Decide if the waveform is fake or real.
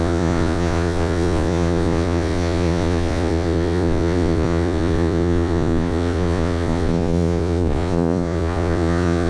fake